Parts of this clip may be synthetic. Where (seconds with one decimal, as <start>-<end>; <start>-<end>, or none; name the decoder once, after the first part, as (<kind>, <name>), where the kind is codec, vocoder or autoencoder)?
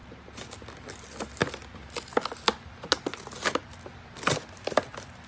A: none